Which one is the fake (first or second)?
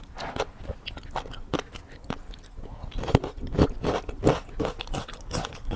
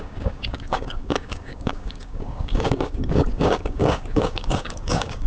second